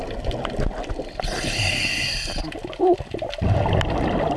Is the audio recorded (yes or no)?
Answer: yes